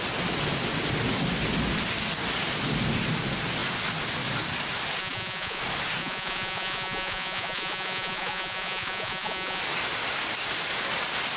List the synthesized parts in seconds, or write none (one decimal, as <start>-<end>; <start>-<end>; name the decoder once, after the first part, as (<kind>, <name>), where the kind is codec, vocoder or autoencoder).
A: 5.0-5.6 (vocoder, Vocos); 6.0-9.6